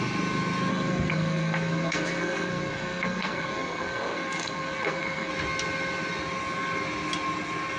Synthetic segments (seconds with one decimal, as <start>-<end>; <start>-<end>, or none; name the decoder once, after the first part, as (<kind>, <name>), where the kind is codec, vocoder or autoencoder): 0.7-5.3 (codec, SNAC)